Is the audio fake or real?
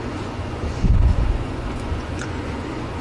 fake